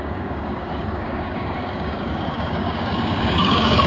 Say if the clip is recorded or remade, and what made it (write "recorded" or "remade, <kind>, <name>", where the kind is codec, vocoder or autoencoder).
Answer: remade, codec, DAC